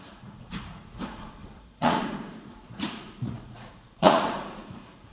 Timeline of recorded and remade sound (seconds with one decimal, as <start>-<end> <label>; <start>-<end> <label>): 0.0-5.1 remade